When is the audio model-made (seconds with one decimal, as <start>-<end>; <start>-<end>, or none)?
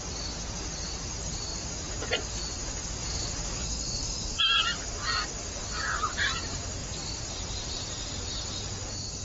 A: 3.0-4.4; 6.8-8.1